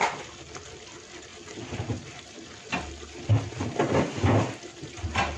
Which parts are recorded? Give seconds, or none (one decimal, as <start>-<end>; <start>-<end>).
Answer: 0.0-5.4